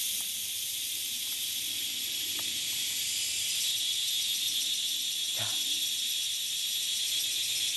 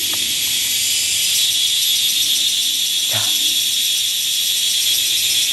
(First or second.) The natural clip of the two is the second